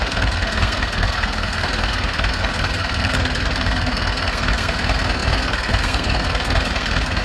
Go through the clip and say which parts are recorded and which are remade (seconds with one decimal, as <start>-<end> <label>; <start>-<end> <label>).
0.0-7.2 remade